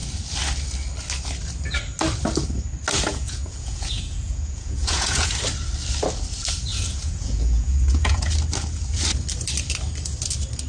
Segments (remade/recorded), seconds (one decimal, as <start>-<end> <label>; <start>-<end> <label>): 0.0-3.1 recorded; 3.1-5.3 remade; 5.3-6.7 recorded; 6.7-8.3 remade; 8.3-10.7 recorded